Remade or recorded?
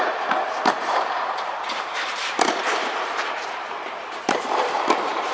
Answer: remade